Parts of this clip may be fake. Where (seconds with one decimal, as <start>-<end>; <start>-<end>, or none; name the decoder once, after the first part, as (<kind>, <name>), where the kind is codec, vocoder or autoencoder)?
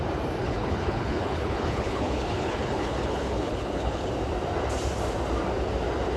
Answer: 0.4-4.1 (codec, HILCodec)